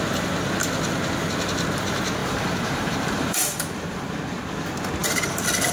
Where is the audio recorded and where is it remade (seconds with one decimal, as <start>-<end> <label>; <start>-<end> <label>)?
0.0-2.2 recorded; 2.2-4.1 remade; 4.1-5.7 recorded